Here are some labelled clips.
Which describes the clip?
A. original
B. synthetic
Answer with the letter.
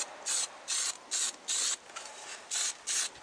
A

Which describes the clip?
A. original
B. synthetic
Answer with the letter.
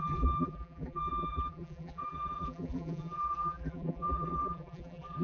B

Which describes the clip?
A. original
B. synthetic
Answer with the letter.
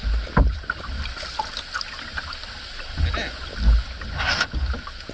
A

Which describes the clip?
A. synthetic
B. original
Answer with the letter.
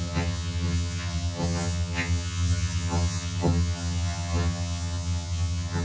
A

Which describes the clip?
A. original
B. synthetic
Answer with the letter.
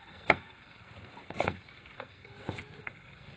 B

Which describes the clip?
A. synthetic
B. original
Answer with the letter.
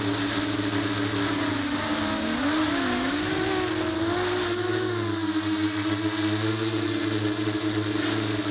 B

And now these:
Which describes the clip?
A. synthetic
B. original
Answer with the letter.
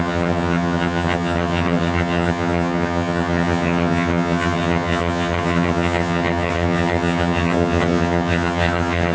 A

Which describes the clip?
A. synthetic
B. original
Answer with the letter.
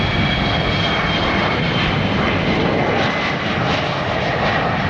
B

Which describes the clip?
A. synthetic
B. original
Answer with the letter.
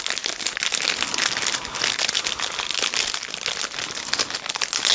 B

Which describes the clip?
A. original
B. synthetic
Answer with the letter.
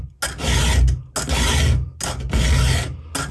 A